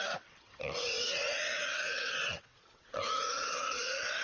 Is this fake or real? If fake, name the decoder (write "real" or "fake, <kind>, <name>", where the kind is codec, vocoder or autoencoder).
fake, vocoder, WaveNeXt